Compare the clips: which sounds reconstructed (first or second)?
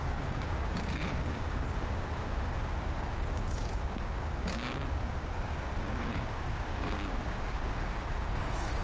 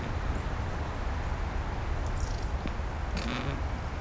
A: first